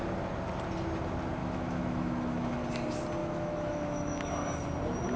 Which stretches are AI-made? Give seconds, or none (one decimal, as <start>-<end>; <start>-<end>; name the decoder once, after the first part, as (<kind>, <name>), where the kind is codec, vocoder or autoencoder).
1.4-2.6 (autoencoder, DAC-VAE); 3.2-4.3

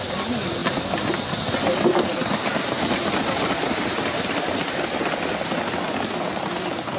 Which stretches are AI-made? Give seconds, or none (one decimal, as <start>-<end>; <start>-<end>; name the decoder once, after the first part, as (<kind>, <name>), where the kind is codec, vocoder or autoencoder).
none

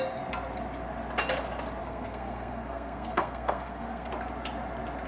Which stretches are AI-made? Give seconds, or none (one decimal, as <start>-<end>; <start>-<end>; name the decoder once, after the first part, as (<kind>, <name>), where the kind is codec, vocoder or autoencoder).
1.8-4.1 (codec, SNAC)